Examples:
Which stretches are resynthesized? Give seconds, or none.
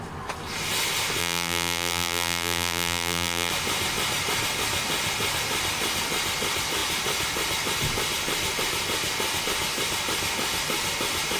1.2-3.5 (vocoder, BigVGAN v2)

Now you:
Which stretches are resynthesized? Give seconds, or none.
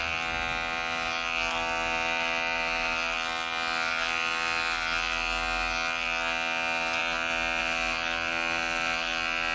none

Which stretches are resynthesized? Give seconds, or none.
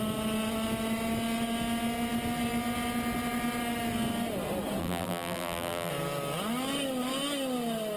4.8-5.9 (vocoder, BigVGAN v2)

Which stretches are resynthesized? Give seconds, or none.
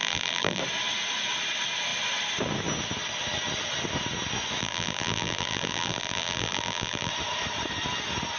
0.0-0.6 (vocoder, BigVGAN v2); 4.6-7.1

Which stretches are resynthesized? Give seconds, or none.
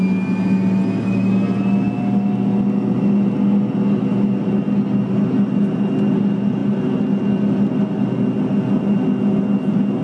none